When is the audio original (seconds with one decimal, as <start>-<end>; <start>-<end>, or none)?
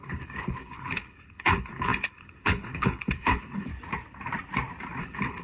3.7-5.0